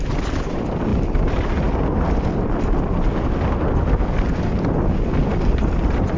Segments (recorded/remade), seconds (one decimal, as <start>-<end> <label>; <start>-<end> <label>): 0.0-6.2 recorded